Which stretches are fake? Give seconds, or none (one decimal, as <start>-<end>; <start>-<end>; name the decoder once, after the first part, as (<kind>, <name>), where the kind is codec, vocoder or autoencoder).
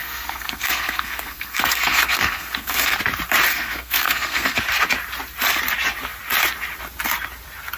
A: 0.0-3.0 (codec, SNAC); 3.5-4.6